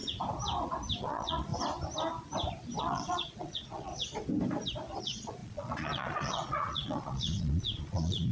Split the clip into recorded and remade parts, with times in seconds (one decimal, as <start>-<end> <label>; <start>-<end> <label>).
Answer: 0.0-1.0 recorded; 1.0-1.5 remade; 1.5-2.8 recorded; 2.8-3.9 remade; 3.9-5.0 recorded; 5.0-8.3 remade